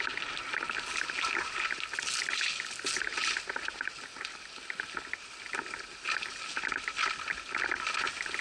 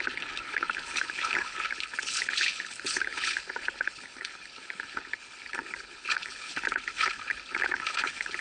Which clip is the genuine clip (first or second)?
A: first